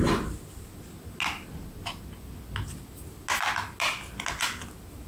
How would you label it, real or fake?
real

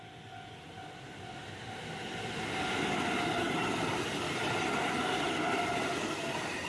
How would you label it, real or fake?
real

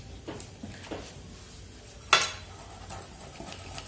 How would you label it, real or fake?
real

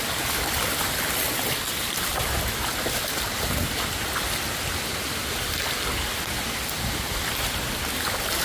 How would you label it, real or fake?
real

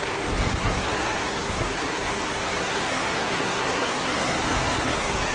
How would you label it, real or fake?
fake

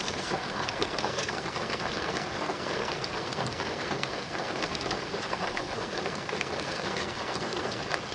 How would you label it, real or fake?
fake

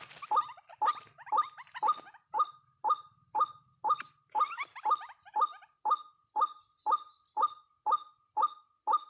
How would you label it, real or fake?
real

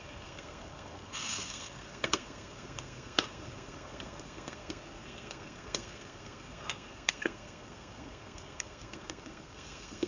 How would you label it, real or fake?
fake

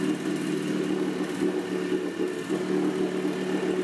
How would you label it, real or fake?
real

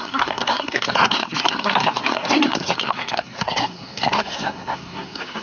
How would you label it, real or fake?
fake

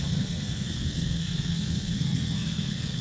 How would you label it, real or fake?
fake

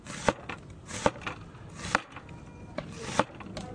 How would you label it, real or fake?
real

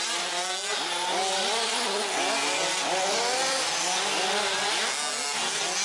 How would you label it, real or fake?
real